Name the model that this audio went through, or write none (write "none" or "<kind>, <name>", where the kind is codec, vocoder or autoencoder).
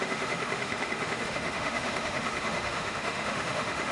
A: autoencoder, DAC-VAE